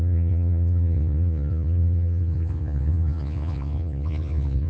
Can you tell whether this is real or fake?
fake